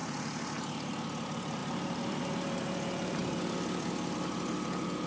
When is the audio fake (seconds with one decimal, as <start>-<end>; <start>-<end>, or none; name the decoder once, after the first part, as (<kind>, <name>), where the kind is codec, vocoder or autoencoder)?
0.0-0.9 (vocoder, BigVGAN v2); 1.6-2.2

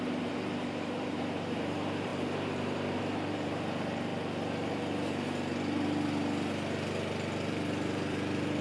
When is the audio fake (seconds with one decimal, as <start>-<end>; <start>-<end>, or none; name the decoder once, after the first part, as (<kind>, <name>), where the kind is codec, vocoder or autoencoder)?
0.0-4.1 (vocoder, BigVGAN v2); 7.5-8.6

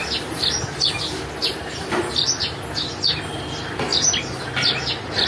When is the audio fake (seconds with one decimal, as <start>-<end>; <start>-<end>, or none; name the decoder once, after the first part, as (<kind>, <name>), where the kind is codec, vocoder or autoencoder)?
1.4-2.0 (vocoder, BigVGAN v2)

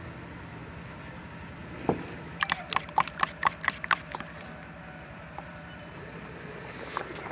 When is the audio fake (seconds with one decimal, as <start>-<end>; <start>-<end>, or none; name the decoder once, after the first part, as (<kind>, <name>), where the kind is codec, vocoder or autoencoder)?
1.6-6.0 (vocoder, BigVGAN v2)